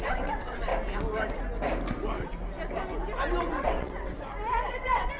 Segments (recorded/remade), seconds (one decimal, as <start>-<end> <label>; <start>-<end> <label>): 0.0-0.7 remade; 0.7-3.4 recorded; 3.4-4.1 remade; 4.1-4.7 recorded; 4.7-5.2 remade